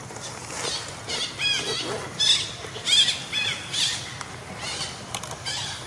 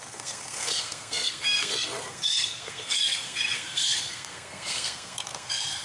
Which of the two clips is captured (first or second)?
first